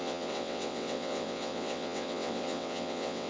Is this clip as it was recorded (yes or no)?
no